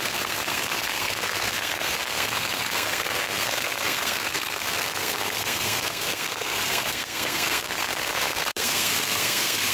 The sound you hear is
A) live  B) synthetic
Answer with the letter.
B